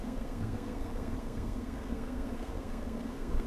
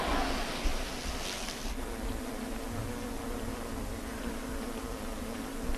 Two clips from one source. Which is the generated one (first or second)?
first